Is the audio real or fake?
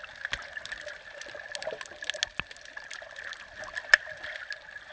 real